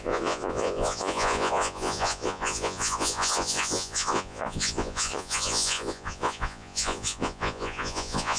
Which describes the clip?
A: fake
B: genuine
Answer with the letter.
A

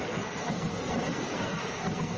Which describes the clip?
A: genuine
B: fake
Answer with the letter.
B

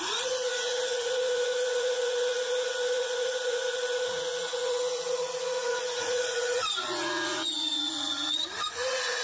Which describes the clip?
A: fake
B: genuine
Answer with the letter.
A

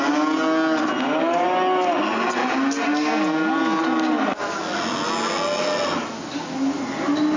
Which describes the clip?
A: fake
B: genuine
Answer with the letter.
B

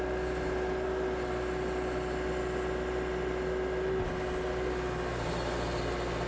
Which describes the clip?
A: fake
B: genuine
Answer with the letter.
B